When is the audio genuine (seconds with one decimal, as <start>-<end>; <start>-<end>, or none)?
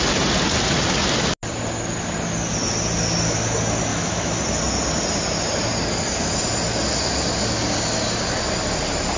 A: 0.0-3.9; 4.4-9.2